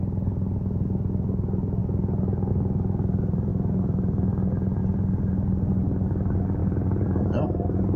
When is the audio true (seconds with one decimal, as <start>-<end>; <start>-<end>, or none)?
0.0-6.6

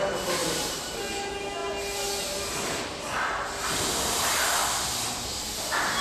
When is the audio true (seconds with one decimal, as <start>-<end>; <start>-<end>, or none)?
0.0-0.4; 0.9-5.3